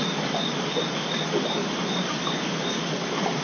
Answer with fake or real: real